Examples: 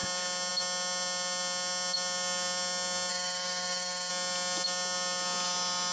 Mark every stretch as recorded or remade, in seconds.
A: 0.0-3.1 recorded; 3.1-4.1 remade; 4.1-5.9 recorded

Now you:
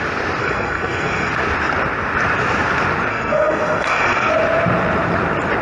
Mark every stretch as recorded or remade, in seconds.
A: 0.0-0.4 recorded; 0.4-1.3 remade; 1.3-3.1 recorded; 3.1-4.3 remade; 4.3-5.6 recorded

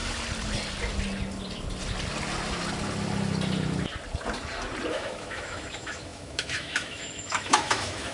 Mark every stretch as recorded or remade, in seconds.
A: 0.0-4.9 recorded; 4.9-8.1 remade

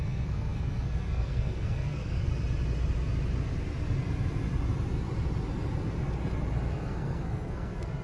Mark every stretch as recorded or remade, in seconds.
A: 0.0-2.3 remade; 2.3-6.7 recorded; 6.7-8.0 remade

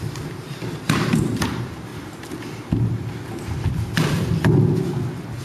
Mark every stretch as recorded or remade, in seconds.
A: 0.0-1.9 remade; 1.9-5.4 recorded